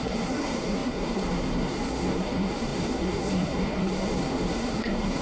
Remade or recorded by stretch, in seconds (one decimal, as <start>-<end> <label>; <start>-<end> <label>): 0.0-5.2 remade